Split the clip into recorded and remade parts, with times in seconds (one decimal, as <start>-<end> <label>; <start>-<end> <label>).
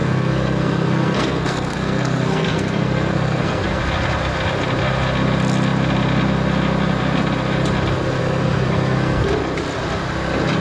0.0-3.8 remade; 3.8-8.2 recorded; 8.2-9.3 remade; 9.3-10.6 recorded